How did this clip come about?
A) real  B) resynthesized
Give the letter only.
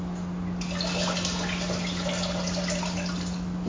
A